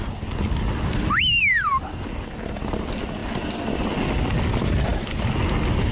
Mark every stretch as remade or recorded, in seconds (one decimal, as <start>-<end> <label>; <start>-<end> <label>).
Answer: 0.0-5.9 recorded